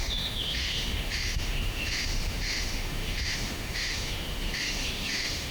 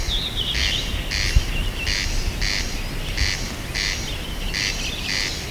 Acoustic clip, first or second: second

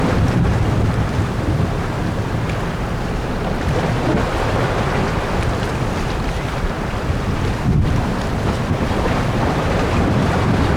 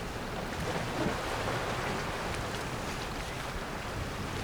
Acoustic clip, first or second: second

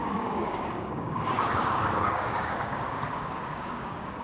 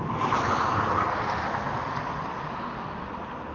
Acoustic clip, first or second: second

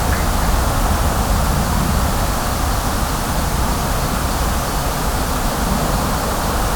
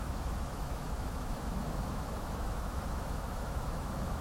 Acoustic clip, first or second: first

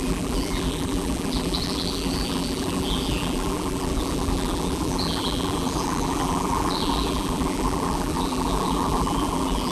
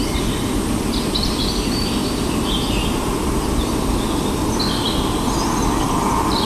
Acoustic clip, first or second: second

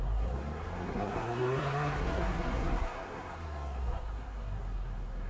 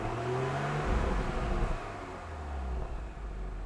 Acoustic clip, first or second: second